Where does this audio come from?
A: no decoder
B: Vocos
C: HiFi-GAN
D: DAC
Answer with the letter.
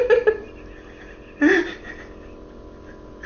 A